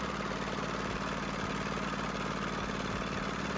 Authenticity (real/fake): real